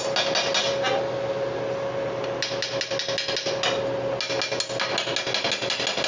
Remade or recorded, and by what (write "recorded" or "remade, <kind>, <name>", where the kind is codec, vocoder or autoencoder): recorded